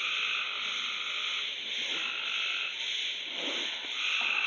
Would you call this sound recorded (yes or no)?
yes